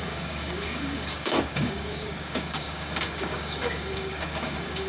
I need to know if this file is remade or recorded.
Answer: remade